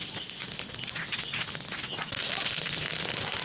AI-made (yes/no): no